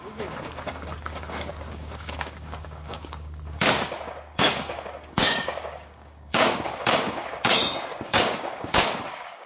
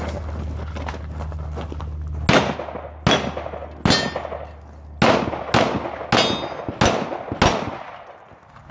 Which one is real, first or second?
second